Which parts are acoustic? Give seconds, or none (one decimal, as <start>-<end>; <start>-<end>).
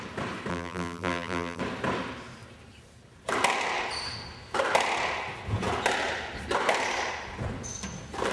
0.0-0.5; 1.6-8.3